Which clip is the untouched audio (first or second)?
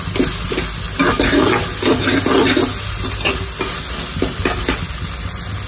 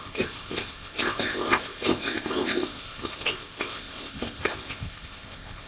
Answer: first